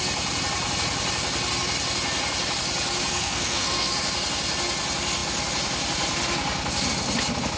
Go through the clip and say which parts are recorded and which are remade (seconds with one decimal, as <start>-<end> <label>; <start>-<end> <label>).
0.0-3.1 recorded; 3.1-3.9 remade; 3.9-7.6 recorded